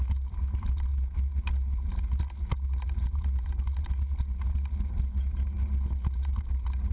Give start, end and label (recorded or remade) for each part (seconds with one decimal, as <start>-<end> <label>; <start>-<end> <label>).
0.0-6.9 recorded